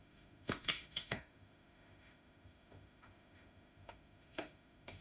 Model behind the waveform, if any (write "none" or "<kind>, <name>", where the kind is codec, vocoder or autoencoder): autoencoder, DAC-VAE